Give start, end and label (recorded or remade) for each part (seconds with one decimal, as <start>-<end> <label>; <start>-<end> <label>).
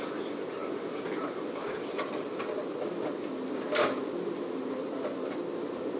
0.0-6.0 recorded